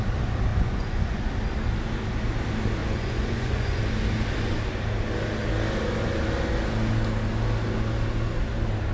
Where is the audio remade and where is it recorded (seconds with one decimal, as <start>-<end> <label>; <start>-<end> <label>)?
0.0-0.5 recorded; 0.5-1.3 remade; 1.3-2.8 recorded; 2.8-3.8 remade; 3.8-8.9 recorded